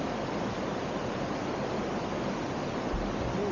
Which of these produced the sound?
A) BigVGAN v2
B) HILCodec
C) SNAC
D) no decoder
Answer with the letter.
D